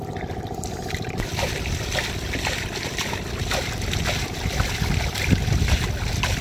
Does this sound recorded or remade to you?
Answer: recorded